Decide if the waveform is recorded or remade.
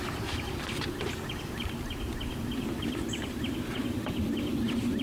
remade